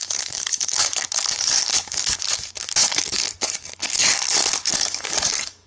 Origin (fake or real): fake